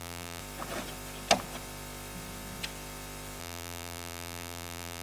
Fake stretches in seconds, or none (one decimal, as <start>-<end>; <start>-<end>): 0.0-0.4; 3.4-5.0